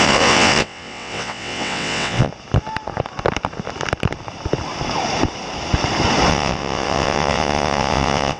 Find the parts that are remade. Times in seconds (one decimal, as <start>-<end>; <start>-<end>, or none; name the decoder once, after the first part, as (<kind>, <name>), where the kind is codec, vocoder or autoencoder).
0.0-2.3 (vocoder, WaveNeXt); 6.3-8.4

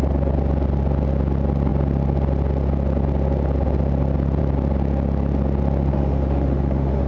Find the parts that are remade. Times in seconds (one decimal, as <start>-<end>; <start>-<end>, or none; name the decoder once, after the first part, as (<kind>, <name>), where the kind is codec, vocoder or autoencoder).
5.9-7.1 (autoencoder, DAC-VAE)

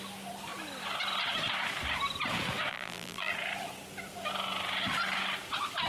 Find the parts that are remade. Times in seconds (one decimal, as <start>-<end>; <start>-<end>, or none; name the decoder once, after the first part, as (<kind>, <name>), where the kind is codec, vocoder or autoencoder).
2.7-3.3 (vocoder, BigVGAN v2)